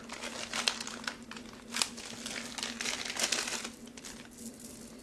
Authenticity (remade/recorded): recorded